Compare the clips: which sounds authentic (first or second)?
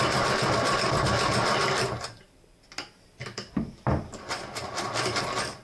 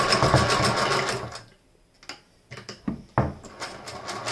second